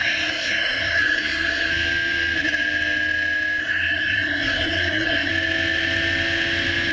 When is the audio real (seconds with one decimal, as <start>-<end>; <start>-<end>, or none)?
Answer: 1.7-3.6; 5.3-6.9